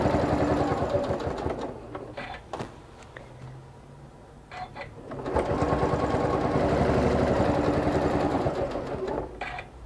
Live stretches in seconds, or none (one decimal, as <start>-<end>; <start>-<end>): 0.0-8.3; 8.8-9.9